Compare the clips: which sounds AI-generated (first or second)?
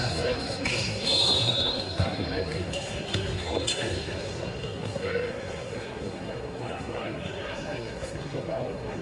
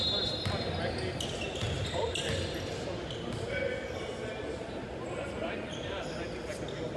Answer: first